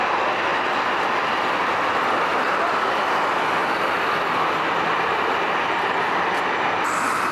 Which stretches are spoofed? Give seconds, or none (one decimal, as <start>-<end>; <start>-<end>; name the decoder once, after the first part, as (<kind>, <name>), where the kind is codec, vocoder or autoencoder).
0.5-1.4 (vocoder, BigVGAN v2); 2.3-2.9; 3.6-6.4